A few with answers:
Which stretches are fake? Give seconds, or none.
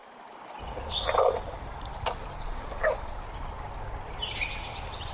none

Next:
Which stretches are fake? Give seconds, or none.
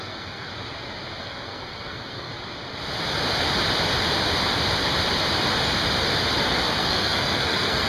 0.0-0.5 (codec, SNAC); 1.2-2.3; 6.4-7.9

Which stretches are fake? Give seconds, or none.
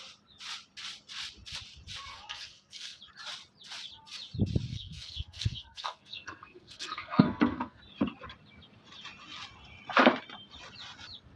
2.1-3.0 (codec, SNAC); 4.7-7.8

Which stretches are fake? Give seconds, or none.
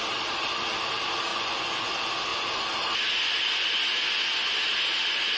1.3-1.9 (vocoder, Vocos)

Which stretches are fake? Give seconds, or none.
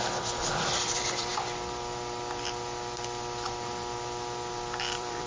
0.0-1.3 (vocoder, BigVGAN v2); 4.5-5.3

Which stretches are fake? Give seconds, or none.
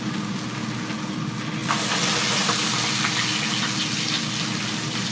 none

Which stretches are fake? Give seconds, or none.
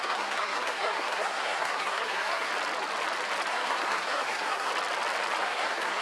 0.0-2.5 (codec, SNAC); 3.5-4.7; 5.4-6.0